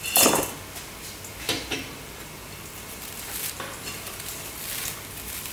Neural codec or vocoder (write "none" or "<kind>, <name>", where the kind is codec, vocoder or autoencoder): none